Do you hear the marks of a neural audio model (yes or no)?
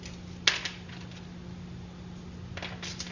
no